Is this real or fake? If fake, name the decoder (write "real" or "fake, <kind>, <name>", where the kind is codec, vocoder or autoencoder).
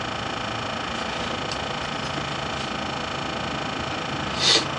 real